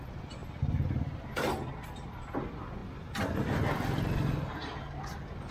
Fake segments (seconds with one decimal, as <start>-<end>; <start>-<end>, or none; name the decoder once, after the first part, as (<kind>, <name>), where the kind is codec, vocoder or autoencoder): none